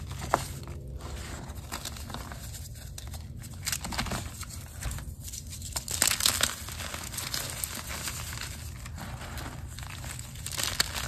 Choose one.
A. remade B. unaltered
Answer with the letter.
B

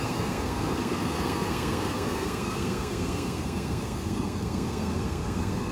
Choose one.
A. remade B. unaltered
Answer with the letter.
A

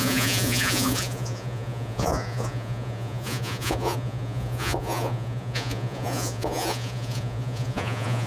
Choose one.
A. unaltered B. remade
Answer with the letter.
B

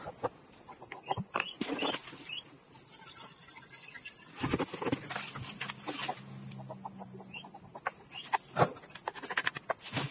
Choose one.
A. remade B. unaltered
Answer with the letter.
B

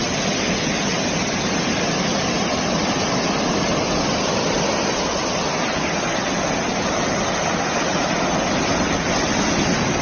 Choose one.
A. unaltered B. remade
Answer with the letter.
A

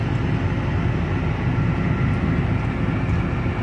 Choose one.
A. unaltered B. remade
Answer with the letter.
A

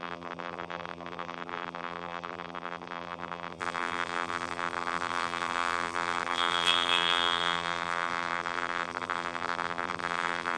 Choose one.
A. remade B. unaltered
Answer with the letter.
A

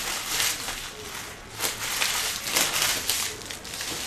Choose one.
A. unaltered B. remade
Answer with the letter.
A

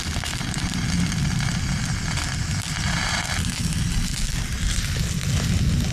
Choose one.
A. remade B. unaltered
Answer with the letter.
B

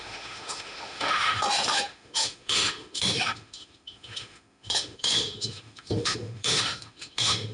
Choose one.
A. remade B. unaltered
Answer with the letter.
A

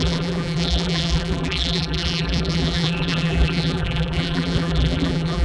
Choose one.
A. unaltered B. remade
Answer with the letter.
B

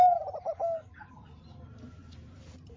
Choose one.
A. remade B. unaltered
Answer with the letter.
A